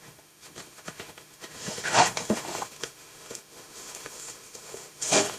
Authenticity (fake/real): fake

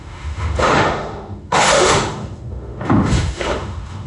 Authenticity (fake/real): fake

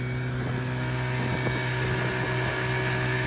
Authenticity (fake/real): real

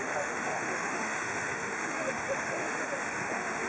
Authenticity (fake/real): fake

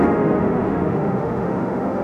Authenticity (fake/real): fake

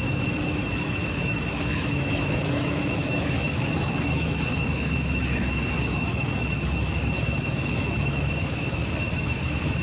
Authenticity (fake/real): fake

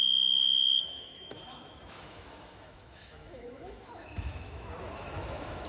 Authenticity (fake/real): fake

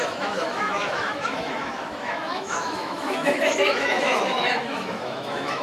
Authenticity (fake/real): fake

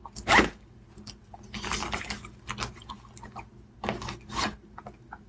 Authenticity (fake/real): real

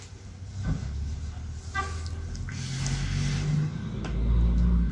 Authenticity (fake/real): real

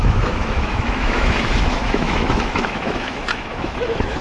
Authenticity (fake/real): fake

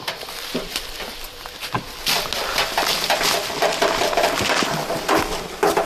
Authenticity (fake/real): real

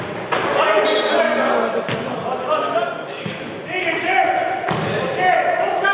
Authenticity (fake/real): real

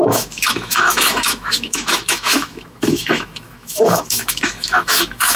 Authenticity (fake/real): fake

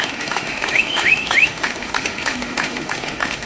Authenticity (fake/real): fake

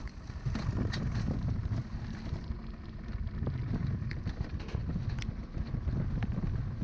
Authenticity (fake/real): real